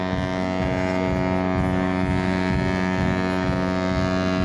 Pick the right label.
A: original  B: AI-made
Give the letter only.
A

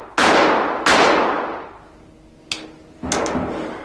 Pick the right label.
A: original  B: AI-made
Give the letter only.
A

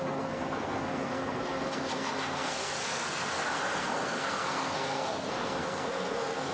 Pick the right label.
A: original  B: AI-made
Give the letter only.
B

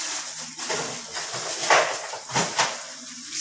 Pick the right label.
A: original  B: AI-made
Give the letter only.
A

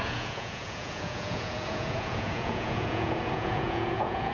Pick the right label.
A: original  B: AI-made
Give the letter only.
B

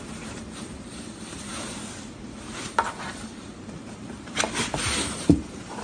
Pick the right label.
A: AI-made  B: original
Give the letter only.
A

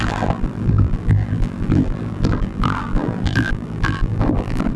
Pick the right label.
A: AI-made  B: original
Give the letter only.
A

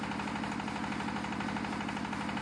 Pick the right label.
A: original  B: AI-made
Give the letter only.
A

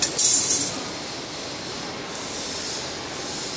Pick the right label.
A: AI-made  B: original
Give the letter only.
B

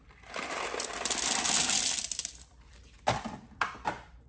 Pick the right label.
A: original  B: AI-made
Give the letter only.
A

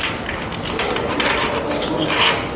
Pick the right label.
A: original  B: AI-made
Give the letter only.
B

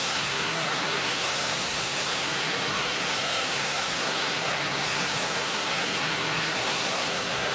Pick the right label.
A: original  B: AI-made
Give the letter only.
B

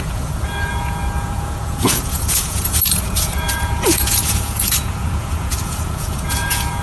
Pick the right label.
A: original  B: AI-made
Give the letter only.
B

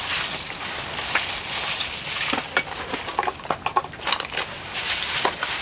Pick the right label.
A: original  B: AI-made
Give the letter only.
A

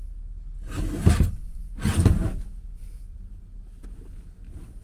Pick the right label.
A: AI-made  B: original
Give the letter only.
B